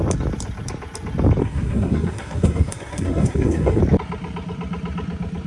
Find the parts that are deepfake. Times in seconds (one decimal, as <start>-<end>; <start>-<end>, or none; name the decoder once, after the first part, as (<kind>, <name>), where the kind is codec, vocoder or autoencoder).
1.4-3.8 (codec, SNAC)